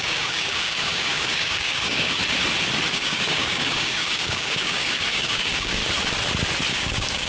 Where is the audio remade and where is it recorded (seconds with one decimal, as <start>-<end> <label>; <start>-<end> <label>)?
0.0-2.2 remade; 2.2-2.9 recorded; 2.9-5.8 remade; 5.8-6.7 recorded; 6.7-7.3 remade